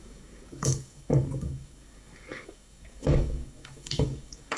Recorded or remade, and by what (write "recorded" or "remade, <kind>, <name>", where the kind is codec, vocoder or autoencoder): remade, codec, DAC